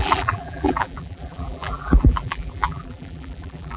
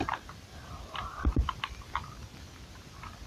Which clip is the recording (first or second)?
second